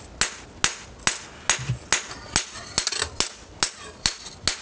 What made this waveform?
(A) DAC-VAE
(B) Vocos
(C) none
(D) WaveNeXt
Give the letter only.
C